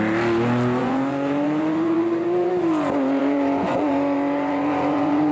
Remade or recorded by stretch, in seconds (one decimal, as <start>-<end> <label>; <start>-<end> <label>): 0.0-0.8 recorded; 0.8-2.5 remade; 2.5-3.2 recorded; 3.2-5.3 remade